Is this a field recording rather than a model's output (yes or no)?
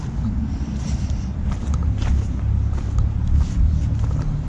yes